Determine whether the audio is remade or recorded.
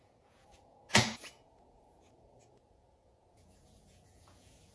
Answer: remade